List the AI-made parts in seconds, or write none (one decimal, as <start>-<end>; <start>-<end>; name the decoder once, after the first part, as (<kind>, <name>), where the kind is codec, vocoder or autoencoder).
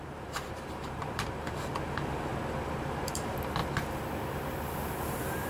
0.0-2.3 (vocoder, BigVGAN v2); 2.9-3.6; 5.0-5.5